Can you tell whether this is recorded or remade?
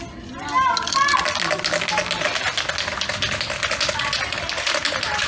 recorded